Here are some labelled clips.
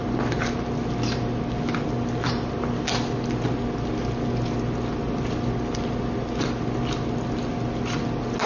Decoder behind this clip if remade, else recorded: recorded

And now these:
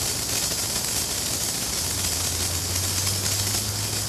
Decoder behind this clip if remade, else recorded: recorded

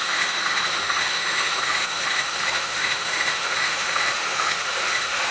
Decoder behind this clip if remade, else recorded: remade, autoencoder, DAC-VAE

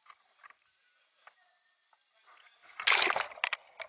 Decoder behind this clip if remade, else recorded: recorded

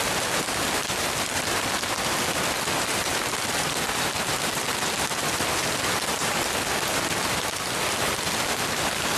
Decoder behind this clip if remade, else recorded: recorded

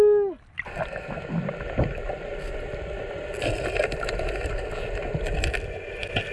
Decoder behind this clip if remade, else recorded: recorded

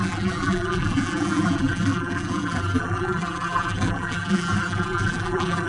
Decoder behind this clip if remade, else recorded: remade, vocoder, BigVGAN v2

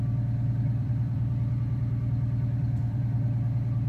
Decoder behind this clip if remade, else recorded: remade, vocoder, BigVGAN v2